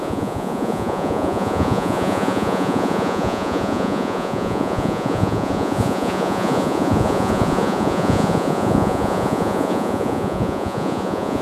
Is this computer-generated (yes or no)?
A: yes